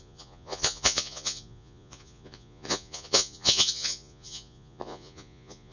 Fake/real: fake